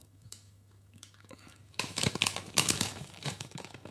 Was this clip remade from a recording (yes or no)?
yes